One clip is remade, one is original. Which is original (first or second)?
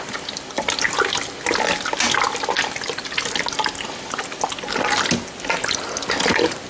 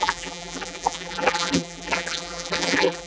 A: first